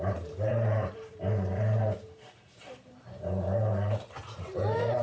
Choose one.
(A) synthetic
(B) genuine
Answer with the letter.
A